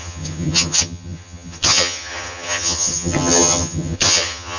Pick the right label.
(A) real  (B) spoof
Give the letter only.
B